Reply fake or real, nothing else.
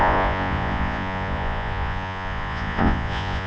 fake